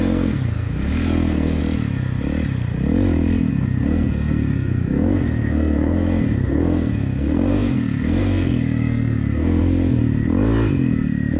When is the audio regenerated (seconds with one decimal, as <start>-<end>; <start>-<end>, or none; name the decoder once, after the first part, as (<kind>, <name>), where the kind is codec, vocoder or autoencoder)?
0.0-1.6 (codec, SNAC); 3.5-10.0